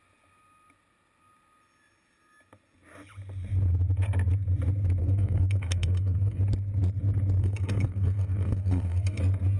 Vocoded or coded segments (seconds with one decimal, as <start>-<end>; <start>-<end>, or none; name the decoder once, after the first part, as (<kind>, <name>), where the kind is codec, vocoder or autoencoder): 5.0-6.4 (codec, SNAC); 7.4-9.2